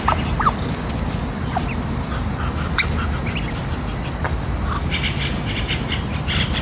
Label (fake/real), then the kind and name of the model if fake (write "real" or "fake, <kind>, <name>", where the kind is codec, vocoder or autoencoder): real